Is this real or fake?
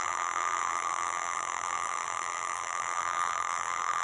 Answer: fake